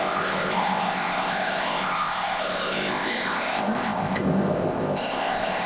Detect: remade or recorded remade